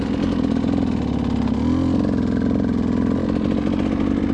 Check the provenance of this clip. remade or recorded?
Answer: recorded